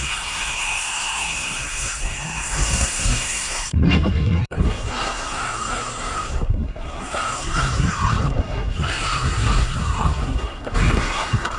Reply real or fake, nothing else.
fake